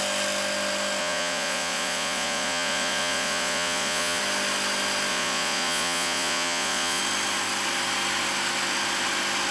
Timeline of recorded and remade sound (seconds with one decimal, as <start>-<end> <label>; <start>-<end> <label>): 0.0-1.0 recorded; 1.0-4.2 remade; 4.2-5.1 recorded; 5.1-7.0 remade; 7.0-9.5 recorded